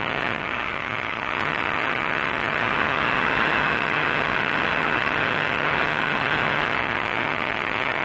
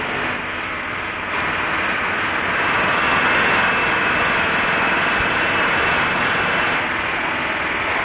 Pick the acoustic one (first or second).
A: second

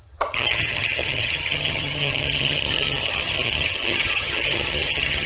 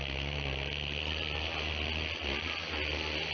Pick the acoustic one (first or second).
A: second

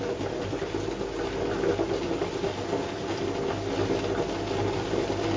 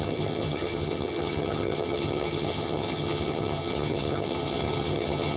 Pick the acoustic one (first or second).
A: first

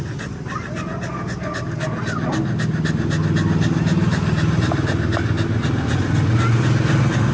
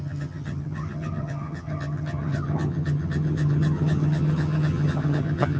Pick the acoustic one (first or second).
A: first